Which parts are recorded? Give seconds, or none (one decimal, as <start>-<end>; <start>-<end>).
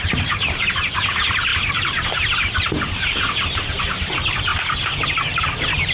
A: 0.0-5.9